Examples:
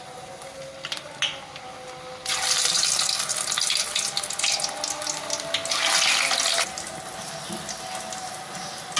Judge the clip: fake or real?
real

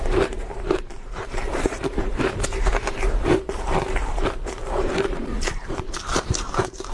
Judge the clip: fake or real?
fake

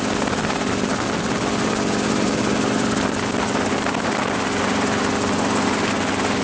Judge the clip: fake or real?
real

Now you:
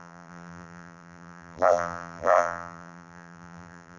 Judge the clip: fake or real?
fake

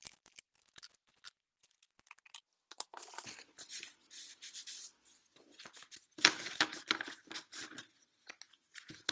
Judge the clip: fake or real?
real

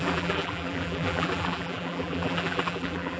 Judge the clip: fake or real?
fake